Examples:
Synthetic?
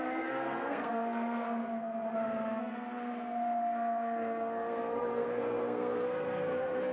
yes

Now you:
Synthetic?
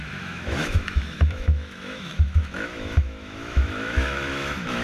yes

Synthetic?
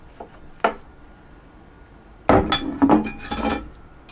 no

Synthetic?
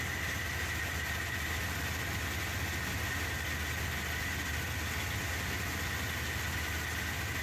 no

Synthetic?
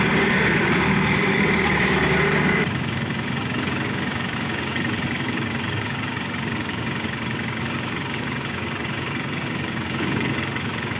yes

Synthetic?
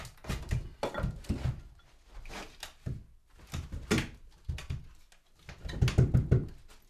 no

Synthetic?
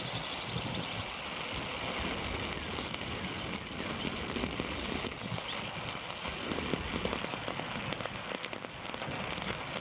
no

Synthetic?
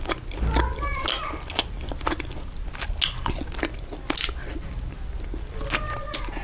no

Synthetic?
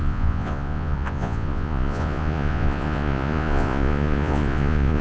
yes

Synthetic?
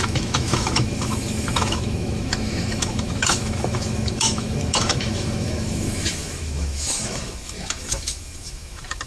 yes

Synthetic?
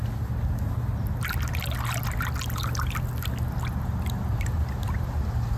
no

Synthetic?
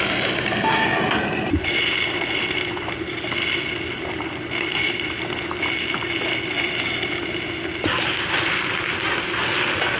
no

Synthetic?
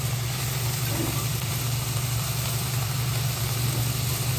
yes